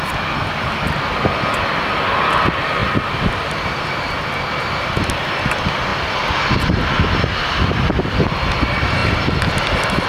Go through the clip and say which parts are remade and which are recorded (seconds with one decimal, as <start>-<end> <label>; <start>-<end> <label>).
0.0-10.1 recorded